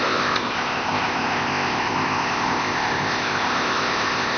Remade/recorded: remade